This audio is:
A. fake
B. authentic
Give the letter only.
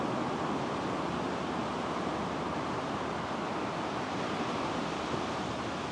B